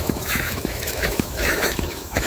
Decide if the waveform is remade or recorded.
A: remade